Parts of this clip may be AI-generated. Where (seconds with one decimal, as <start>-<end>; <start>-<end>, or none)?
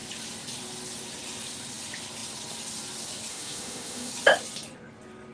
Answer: 3.3-4.1